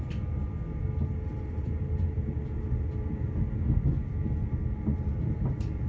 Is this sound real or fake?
real